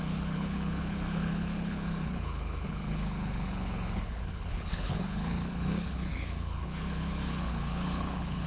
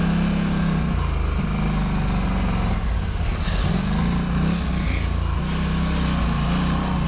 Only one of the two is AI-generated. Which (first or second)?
first